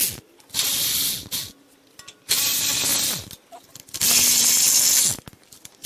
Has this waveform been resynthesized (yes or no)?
no